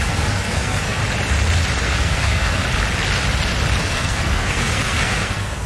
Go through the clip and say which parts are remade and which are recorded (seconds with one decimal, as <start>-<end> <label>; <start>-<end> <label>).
0.0-1.0 remade; 1.0-1.8 recorded; 1.8-2.6 remade; 2.6-3.8 recorded; 3.8-5.7 remade